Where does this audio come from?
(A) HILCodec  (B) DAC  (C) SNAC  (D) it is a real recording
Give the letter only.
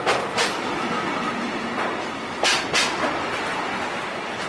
D